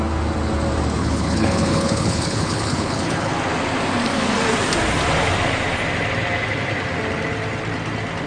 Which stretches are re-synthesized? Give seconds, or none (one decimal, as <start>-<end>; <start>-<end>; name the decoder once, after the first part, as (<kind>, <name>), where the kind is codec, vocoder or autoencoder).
1.0-3.3 (codec, HILCodec)